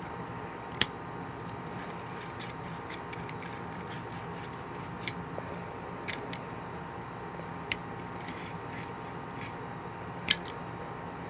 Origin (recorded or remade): remade